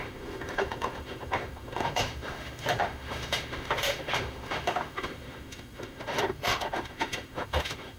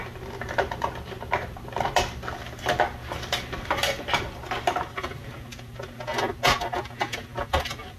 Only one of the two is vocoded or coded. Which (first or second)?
first